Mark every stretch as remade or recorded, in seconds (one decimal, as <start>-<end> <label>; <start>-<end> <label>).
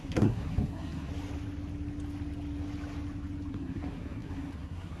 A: 0.0-1.1 remade; 1.1-3.5 recorded; 3.5-5.0 remade